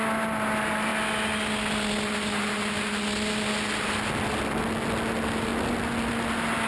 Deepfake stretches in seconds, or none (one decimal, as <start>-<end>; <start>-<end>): none